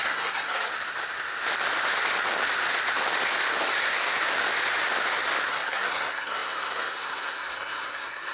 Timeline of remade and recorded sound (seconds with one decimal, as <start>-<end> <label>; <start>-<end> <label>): 0.0-0.7 remade; 0.7-5.5 recorded; 5.5-8.3 remade